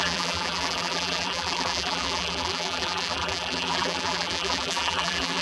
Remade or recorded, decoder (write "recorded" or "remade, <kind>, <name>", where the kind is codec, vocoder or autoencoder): remade, vocoder, BigVGAN v2